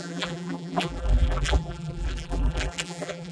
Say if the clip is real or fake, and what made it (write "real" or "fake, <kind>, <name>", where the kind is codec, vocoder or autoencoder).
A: fake, vocoder, BigVGAN v2